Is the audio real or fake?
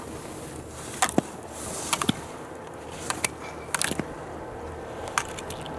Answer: real